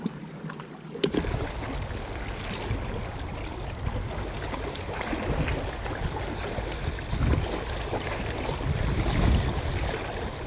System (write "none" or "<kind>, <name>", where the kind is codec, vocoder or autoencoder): none